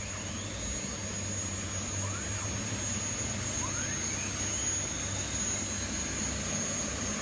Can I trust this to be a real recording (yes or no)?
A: yes